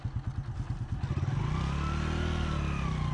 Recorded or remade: recorded